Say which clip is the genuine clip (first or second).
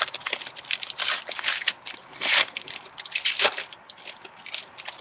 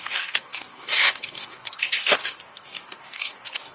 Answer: first